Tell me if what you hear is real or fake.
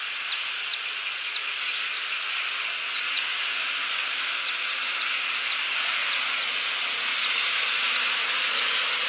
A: real